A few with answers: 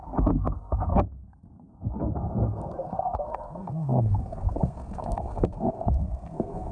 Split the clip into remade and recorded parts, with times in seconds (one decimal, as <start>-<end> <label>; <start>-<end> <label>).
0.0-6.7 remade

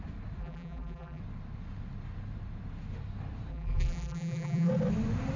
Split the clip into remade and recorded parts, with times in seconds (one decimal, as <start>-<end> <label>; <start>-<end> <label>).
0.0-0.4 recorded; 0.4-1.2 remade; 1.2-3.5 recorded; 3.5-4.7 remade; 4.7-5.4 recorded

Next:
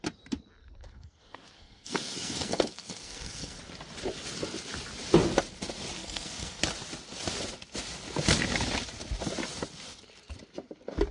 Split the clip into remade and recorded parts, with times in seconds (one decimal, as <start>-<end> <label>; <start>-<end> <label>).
0.0-0.6 recorded; 0.6-3.6 remade; 3.6-6.0 recorded; 6.0-6.6 remade; 6.6-11.1 recorded

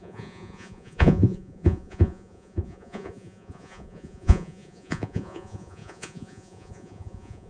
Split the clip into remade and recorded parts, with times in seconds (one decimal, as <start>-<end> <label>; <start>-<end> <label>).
0.0-7.5 remade

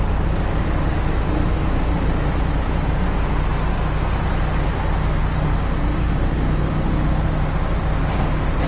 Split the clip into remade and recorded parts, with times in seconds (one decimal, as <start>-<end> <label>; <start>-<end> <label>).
0.0-8.7 recorded

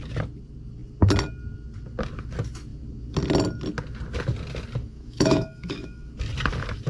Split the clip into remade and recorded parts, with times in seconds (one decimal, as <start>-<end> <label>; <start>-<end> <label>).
0.0-4.8 recorded; 4.8-6.1 remade; 6.1-6.9 recorded